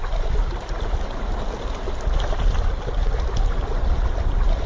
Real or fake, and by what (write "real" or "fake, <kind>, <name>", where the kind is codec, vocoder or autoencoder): real